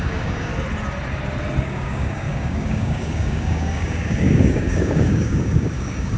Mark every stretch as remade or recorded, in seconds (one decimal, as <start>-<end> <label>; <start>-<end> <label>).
0.0-0.5 remade; 0.5-1.6 recorded; 1.6-6.2 remade

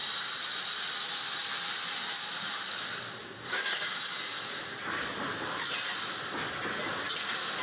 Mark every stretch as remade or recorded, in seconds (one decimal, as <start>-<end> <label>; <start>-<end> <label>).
0.0-3.2 recorded; 3.2-3.9 remade; 3.9-7.6 recorded

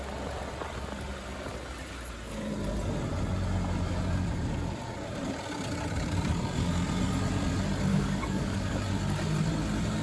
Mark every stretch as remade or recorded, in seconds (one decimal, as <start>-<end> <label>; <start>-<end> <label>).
0.0-7.9 recorded; 7.9-8.8 remade; 8.8-10.0 recorded

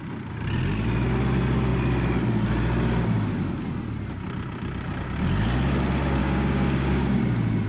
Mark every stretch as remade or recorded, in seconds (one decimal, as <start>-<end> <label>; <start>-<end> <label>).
0.0-6.2 recorded; 6.2-7.2 remade; 7.2-7.7 recorded